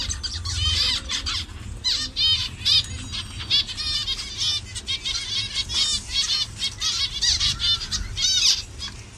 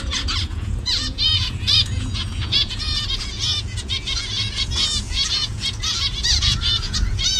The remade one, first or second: second